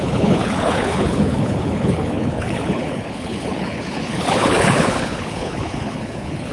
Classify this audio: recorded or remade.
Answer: remade